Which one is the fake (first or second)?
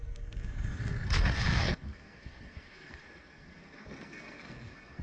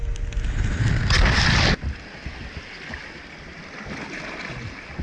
first